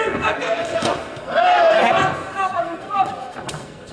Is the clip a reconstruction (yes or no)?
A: yes